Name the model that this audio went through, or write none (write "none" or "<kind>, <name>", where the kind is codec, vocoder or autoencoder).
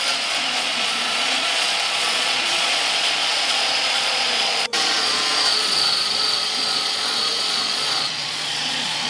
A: vocoder, Vocos